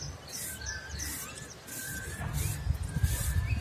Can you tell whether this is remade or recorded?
recorded